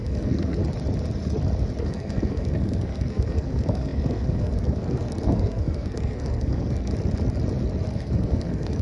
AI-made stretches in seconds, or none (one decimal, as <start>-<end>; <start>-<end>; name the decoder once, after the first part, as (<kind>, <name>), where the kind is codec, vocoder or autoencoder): 0.0-0.6 (codec, SNAC); 1.8-6.9; 7.9-8.8